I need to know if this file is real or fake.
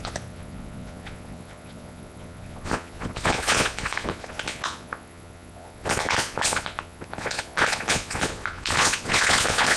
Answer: fake